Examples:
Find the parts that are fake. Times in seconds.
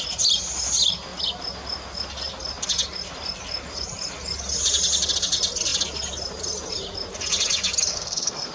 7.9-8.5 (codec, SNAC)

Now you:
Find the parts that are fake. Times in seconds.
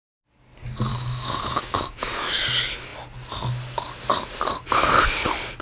0.9-2.4 (autoencoder, DAC-VAE)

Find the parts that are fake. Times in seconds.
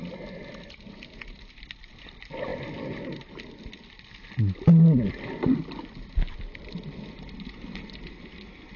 none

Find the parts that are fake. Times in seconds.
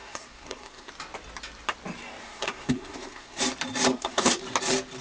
0.0-0.9 (codec, SNAC); 2.2-3.4; 3.9-4.4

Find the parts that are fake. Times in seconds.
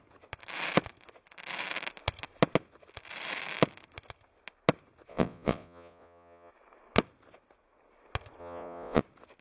5.1-6.5 (vocoder, Vocos); 8.4-9.0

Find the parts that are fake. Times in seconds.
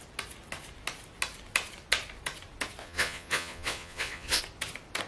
2.8-4.4 (vocoder, Vocos)